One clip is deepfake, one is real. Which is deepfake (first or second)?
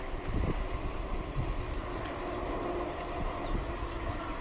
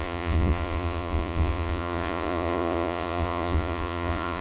second